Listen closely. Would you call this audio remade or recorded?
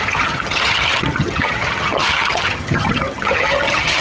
remade